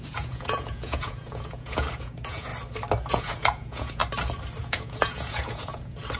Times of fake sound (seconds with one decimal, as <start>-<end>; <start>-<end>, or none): 0.0-2.5; 3.1-4.0; 4.6-6.2